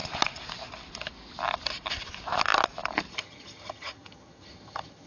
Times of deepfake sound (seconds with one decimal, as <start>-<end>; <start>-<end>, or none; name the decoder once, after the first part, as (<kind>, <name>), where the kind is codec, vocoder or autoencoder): 3.1-5.1 (vocoder, HiFi-GAN)